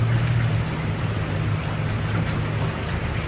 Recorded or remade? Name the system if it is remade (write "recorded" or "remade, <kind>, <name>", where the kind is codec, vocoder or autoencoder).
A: recorded